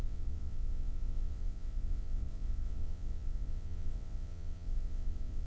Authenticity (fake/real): fake